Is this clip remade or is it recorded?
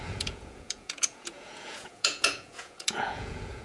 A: remade